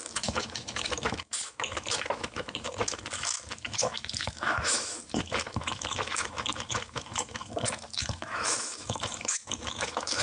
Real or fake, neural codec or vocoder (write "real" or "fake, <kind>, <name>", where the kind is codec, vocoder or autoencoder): fake, autoencoder, DAC-VAE